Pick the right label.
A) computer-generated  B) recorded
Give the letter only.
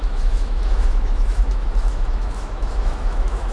A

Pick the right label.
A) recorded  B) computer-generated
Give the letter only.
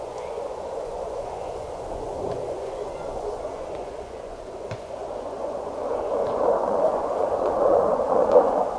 B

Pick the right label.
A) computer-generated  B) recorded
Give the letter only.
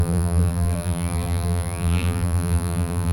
A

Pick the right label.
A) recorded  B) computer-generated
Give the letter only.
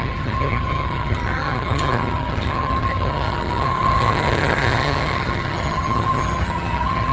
B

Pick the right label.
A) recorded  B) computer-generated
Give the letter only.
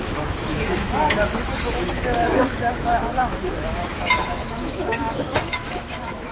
B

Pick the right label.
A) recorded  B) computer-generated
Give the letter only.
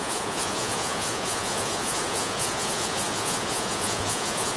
B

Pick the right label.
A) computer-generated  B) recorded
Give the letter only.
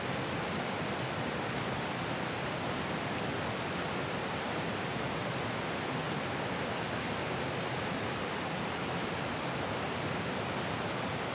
B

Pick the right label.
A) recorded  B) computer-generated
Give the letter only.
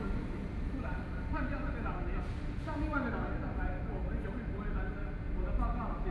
A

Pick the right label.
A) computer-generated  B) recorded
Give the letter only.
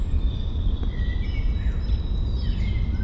B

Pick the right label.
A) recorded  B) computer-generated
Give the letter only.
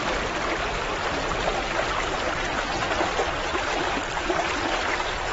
A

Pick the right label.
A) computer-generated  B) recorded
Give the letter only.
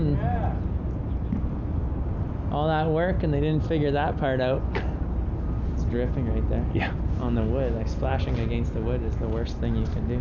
B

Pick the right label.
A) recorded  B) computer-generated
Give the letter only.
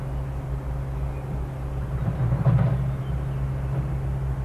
A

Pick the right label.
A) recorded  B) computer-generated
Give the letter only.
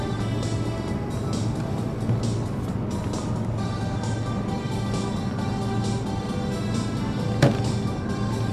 A